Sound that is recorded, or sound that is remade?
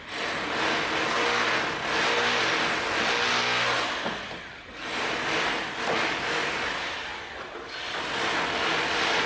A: recorded